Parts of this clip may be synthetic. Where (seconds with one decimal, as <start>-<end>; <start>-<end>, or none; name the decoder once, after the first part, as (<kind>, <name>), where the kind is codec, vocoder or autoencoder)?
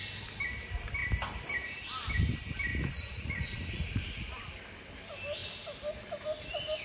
2.7-4.0 (vocoder, Vocos)